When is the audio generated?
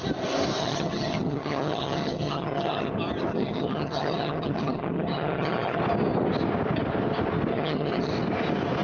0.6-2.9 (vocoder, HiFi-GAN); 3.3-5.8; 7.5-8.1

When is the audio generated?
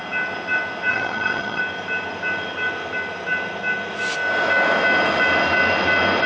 0.9-1.6 (vocoder, HiFi-GAN)